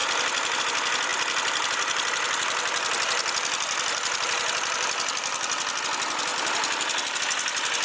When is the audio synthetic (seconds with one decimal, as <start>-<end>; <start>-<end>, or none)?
0.0-0.6; 1.1-5.8; 6.3-7.2